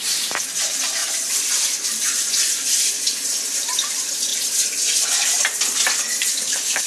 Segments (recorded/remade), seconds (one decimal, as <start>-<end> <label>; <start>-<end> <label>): 0.0-6.3 recorded; 6.3-6.9 remade